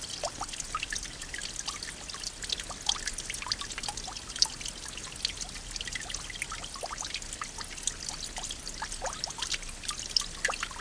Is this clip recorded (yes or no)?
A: yes